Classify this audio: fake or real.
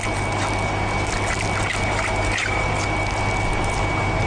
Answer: real